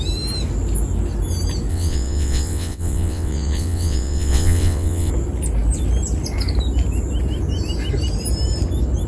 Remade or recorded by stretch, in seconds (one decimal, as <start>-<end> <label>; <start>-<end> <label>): 0.0-1.7 recorded; 1.7-5.1 remade; 5.1-9.1 recorded